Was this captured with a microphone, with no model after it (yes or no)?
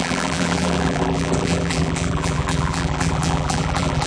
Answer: no